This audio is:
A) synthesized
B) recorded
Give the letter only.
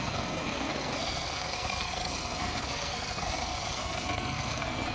A